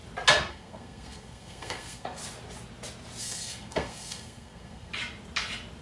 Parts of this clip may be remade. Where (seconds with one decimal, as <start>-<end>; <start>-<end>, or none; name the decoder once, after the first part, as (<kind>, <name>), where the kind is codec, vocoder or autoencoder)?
0.5-2.2 (codec, SNAC); 3.2-4.9